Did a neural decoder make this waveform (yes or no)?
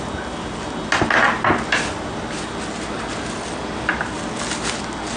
no